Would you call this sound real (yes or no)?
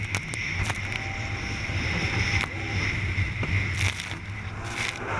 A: yes